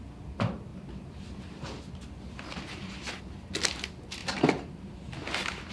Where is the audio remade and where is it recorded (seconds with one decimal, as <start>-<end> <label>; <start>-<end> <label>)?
0.0-5.7 recorded